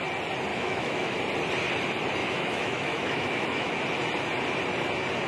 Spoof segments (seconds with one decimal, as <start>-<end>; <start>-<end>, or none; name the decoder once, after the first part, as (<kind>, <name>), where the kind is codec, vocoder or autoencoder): 0.5-1.2 (autoencoder, DAC-VAE); 2.2-3.8